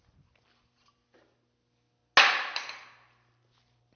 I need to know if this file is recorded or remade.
recorded